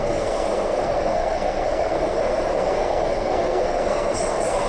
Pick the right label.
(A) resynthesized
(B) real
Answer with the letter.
A